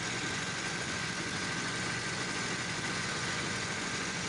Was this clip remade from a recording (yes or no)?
yes